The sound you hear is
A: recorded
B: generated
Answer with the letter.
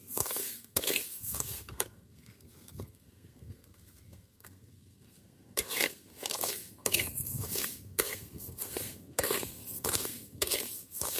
B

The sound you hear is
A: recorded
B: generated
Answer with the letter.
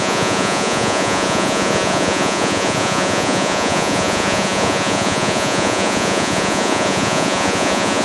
B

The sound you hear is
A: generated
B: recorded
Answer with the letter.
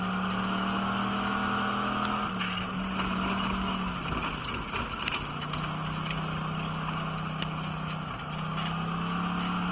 B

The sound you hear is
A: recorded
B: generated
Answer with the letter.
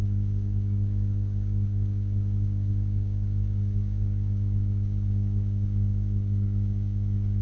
B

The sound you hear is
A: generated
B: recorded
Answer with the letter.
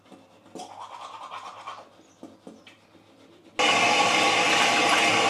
B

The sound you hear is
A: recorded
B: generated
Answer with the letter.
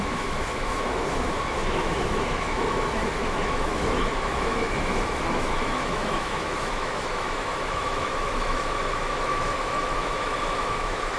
B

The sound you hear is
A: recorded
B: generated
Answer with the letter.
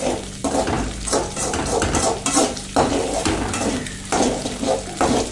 A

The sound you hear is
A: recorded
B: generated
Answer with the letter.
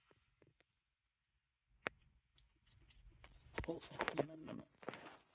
B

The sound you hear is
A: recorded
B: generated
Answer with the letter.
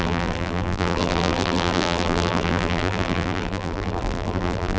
B